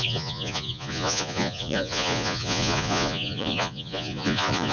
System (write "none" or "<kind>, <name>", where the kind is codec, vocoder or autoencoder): vocoder, Vocos